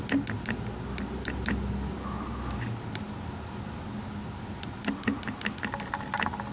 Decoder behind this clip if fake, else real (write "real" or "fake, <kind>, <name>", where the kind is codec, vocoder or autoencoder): real